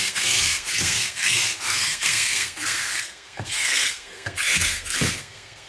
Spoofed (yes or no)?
yes